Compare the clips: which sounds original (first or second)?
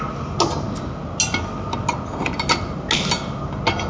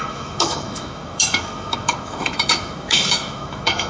first